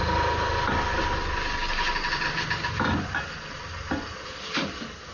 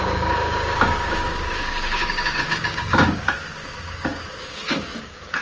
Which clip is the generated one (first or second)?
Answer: second